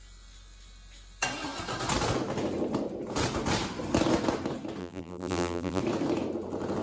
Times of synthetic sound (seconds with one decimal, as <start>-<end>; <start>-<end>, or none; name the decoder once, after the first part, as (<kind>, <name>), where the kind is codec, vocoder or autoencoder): 4.8-5.8 (vocoder, BigVGAN v2)